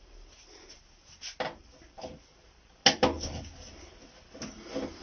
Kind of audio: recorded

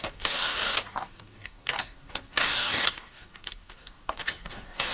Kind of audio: remade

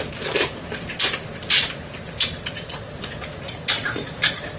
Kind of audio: recorded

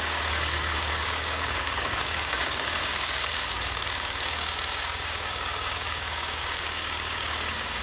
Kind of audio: remade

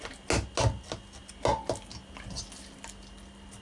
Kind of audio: recorded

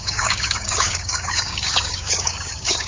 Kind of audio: remade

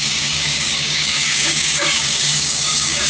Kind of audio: remade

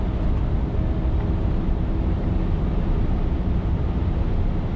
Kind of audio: recorded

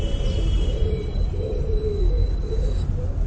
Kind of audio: recorded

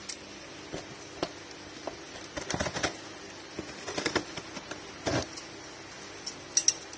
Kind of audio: recorded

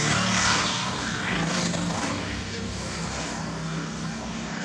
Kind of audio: remade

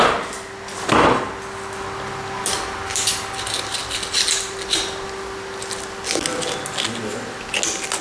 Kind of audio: recorded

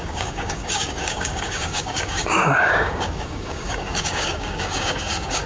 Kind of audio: remade